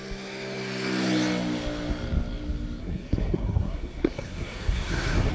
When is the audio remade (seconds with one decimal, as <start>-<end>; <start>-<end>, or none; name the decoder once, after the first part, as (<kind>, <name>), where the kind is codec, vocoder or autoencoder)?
2.8-5.3 (codec, SNAC)